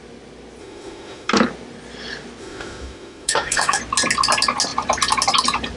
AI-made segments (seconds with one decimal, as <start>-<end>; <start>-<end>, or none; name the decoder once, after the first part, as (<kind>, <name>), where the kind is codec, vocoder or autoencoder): 0.6-1.3 (autoencoder, DAC-VAE); 2.4-3.8

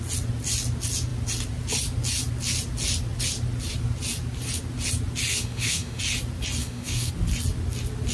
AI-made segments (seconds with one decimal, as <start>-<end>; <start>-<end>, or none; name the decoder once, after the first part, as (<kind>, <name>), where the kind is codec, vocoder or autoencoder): 5.3-6.0 (autoencoder, DAC-VAE); 6.6-7.1

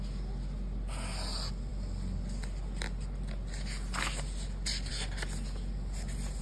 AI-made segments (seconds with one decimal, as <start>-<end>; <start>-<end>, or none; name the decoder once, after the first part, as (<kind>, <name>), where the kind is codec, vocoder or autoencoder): none

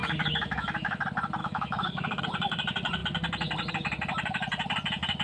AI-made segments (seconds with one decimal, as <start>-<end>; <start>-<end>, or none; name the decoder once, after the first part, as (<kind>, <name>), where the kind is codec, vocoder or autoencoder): 0.0-1.0 (autoencoder, DAC-VAE); 1.4-2.2

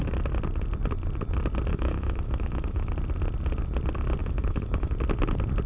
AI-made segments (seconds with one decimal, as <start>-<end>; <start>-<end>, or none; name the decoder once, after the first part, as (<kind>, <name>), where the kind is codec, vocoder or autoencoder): 1.7-2.9 (autoencoder, DAC-VAE); 4.2-4.9

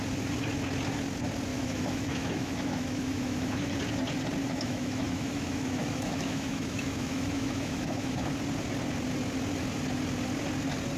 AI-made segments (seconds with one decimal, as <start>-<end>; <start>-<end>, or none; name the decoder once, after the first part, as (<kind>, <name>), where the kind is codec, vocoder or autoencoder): 1.5-3.7 (autoencoder, DAC-VAE); 4.4-8.3

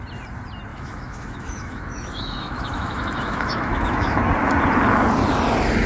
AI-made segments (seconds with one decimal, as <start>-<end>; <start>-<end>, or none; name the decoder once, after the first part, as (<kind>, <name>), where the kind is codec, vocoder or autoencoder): 0.7-4.2 (autoencoder, DAC-VAE)